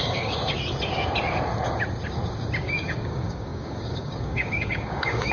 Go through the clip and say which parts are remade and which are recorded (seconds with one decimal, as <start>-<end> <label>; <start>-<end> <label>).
0.0-0.4 remade; 0.4-2.6 recorded; 2.6-5.3 remade